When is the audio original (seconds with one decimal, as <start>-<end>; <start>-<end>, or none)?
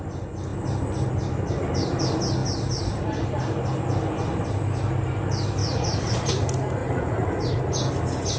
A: 0.0-5.6; 6.3-6.8; 7.6-8.4